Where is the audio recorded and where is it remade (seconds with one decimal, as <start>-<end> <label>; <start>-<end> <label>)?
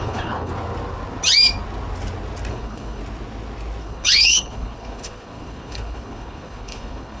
0.0-0.5 remade; 0.5-2.5 recorded; 2.5-3.0 remade; 3.0-3.8 recorded; 3.8-7.2 remade